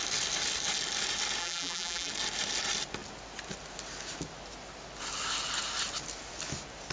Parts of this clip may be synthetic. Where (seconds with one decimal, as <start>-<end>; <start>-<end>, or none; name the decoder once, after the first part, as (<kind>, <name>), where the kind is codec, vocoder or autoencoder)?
1.4-2.1 (vocoder, BigVGAN v2)